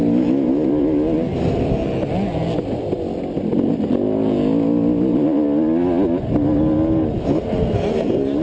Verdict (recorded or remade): recorded